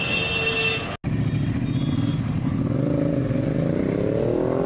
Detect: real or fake real